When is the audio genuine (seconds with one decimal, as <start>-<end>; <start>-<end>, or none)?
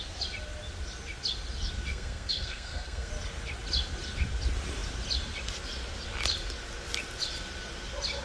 0.0-1.9; 3.1-8.2